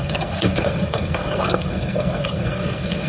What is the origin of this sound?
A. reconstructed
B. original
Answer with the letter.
A